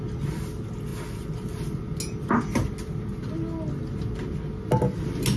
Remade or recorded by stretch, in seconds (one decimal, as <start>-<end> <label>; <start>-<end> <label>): 0.0-5.4 recorded